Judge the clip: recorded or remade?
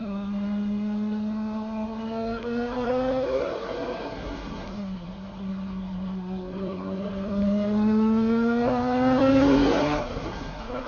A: remade